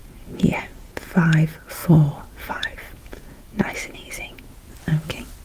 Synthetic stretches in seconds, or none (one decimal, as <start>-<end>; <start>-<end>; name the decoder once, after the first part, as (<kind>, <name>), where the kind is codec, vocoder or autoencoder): 0.0-1.1 (vocoder, Vocos); 1.8-4.7